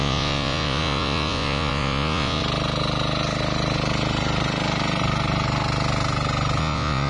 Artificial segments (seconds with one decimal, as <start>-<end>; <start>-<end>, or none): 0.0-2.4; 6.6-7.1